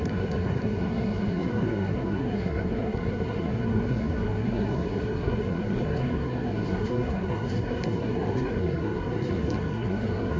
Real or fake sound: fake